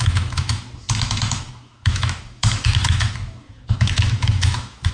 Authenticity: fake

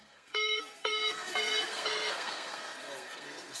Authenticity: fake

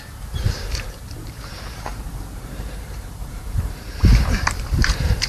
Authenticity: fake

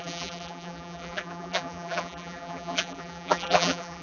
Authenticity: fake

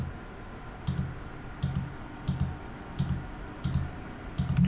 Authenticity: real